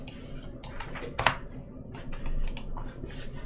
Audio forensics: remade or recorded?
recorded